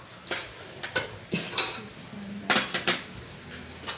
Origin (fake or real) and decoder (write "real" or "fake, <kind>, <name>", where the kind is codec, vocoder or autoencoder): real